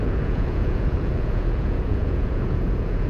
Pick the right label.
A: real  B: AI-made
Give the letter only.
B